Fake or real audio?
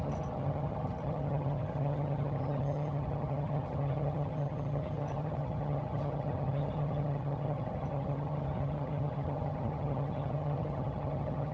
fake